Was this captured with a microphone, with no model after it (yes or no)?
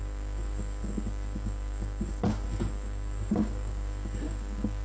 no